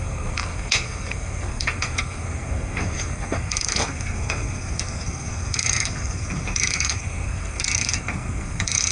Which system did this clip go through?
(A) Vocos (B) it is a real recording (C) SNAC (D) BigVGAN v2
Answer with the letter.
C